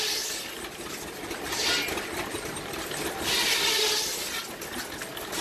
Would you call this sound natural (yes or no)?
yes